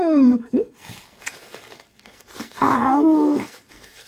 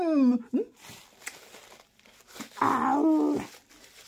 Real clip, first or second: second